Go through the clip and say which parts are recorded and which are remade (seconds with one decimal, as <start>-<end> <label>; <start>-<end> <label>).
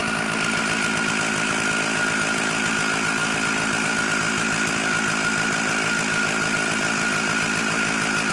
0.0-8.3 recorded